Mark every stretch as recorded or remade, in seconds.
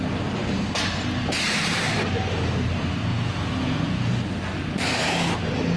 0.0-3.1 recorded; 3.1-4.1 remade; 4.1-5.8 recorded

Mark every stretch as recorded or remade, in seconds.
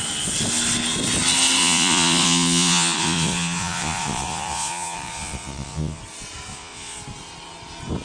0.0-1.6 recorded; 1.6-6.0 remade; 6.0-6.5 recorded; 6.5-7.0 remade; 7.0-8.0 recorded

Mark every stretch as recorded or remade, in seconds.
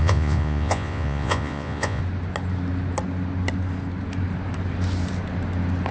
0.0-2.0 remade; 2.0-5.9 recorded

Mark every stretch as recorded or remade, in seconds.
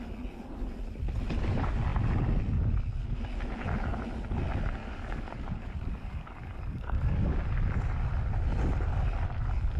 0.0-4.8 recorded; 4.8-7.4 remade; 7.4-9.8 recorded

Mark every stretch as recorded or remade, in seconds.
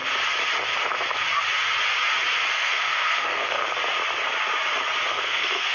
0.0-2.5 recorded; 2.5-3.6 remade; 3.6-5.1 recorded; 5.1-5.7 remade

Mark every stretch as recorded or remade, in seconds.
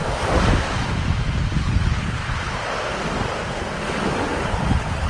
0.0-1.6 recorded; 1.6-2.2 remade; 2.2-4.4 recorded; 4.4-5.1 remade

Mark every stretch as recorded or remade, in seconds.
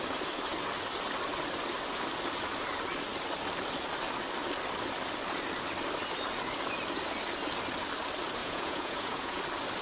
0.0-8.4 recorded; 8.4-9.4 remade; 9.4-9.8 recorded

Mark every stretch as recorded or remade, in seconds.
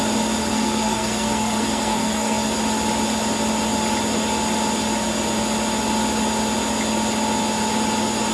0.0-0.4 recorded; 0.4-2.5 remade; 2.5-8.3 recorded